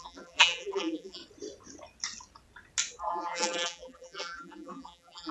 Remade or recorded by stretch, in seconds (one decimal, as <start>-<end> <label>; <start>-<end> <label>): 0.0-1.2 remade; 1.2-3.0 recorded; 3.0-5.3 remade